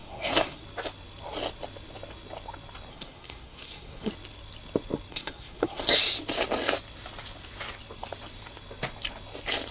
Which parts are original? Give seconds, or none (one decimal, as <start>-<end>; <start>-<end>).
0.6-2.9; 4.1-5.1; 5.9-9.7